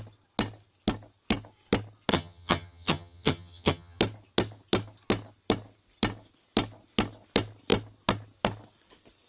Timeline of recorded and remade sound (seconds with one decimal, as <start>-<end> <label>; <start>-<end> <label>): 0.0-2.1 recorded; 2.1-4.0 remade; 4.0-9.3 recorded